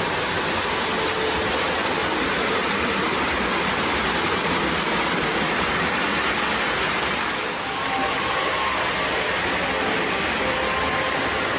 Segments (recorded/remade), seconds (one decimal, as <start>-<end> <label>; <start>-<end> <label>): 0.0-1.8 recorded; 1.8-6.1 remade; 6.1-11.6 recorded